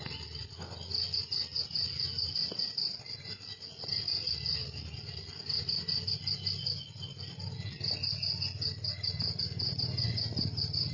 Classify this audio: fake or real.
real